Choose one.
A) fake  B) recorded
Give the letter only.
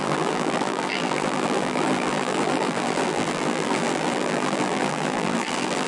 A